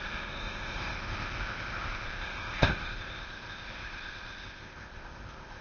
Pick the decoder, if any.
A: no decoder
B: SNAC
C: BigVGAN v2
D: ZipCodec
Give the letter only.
D